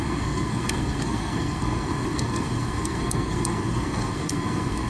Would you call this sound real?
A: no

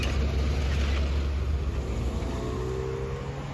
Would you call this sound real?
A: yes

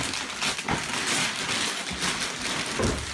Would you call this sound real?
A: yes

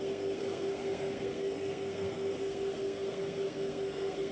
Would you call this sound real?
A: no